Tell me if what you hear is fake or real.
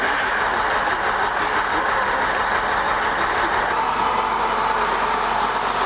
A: real